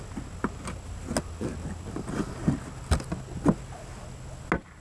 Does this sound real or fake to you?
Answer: real